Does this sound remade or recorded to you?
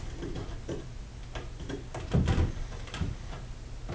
recorded